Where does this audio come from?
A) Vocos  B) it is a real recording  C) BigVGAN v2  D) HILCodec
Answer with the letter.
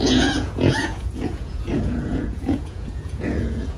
A